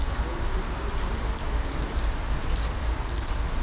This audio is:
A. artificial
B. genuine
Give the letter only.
B